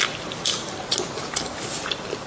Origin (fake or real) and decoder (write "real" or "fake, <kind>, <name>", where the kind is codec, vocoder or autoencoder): real